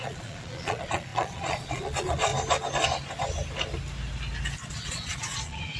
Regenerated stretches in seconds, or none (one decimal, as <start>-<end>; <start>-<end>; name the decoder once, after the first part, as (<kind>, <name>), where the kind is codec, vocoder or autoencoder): 0.0-2.3 (vocoder, Vocos); 4.7-5.8